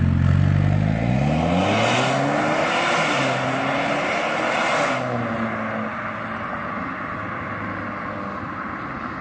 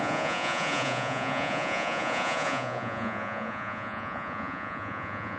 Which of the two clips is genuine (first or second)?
first